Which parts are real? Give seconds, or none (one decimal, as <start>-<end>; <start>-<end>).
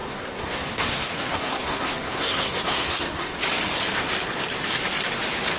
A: 3.4-5.6